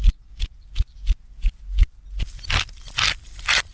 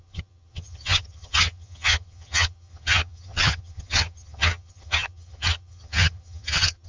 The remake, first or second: second